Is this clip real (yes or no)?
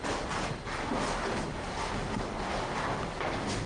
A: yes